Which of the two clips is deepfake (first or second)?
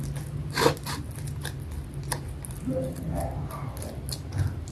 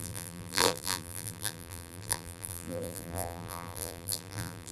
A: second